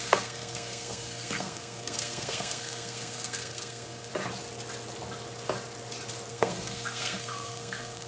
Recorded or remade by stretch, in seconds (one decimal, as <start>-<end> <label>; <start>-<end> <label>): 0.0-4.1 remade; 4.1-6.3 recorded; 6.3-8.1 remade